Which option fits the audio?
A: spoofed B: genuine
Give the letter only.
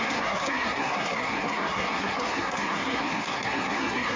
A